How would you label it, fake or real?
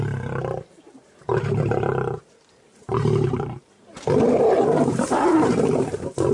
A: fake